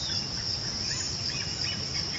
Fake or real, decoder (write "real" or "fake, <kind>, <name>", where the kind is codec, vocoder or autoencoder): real